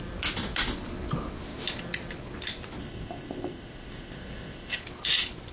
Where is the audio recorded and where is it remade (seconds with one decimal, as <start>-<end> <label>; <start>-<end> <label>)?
0.0-2.8 recorded; 2.8-4.8 remade; 4.8-5.5 recorded